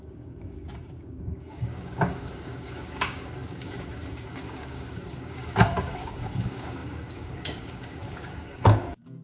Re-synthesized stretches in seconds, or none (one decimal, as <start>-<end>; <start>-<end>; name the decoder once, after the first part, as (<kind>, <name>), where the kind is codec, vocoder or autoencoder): 0.0-9.2 (codec, DAC)